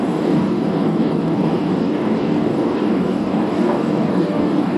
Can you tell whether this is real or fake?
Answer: fake